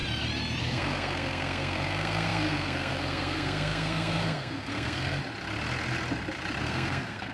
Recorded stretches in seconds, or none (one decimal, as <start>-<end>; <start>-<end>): 0.0-0.6; 5.2-6.6